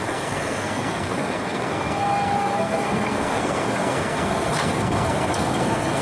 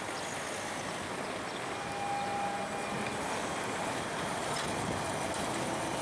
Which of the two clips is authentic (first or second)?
second